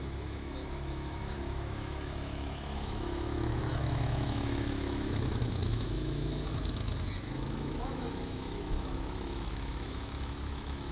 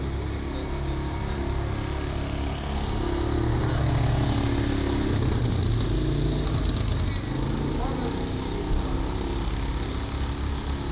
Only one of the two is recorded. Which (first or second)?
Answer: second